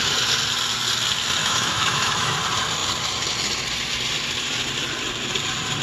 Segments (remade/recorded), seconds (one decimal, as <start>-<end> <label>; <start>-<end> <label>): 0.0-1.4 recorded; 1.4-2.4 remade; 2.4-5.8 recorded